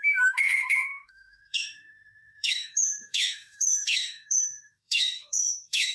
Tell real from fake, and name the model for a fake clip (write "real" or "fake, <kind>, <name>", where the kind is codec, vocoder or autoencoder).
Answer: fake, autoencoder, DAC-VAE